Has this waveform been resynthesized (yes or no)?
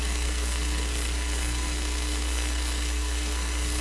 yes